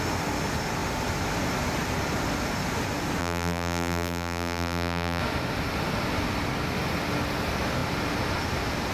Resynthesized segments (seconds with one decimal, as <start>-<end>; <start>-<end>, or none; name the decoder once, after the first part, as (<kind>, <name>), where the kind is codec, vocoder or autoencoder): 3.2-5.2 (vocoder, BigVGAN v2)